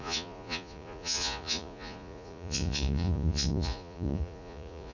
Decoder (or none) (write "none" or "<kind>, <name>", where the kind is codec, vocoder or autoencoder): vocoder, Vocos